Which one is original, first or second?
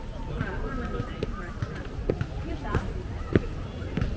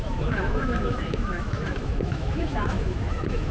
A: first